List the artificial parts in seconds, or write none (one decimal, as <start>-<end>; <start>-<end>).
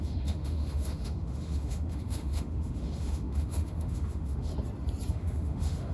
0.0-4.5; 5.1-5.9